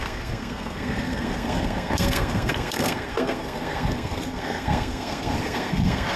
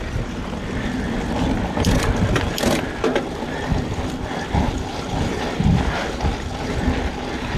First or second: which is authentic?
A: second